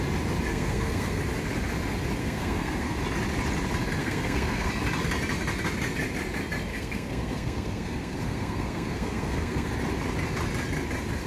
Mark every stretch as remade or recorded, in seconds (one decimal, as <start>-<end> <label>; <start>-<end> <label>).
0.0-0.5 recorded; 0.5-1.2 remade; 1.2-2.2 recorded; 2.2-3.0 remade; 3.0-4.0 recorded; 4.0-4.7 remade; 4.7-6.7 recorded; 6.7-9.7 remade; 9.7-11.3 recorded